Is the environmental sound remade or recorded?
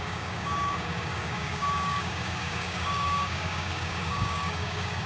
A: remade